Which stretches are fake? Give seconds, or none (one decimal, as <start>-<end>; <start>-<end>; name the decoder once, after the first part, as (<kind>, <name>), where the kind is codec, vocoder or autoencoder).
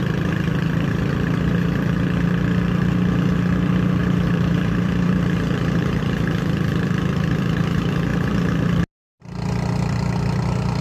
4.0-6.0 (vocoder, BigVGAN v2); 8.1-8.8